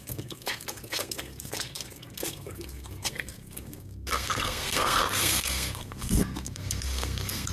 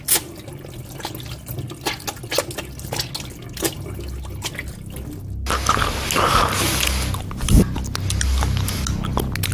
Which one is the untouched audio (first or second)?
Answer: second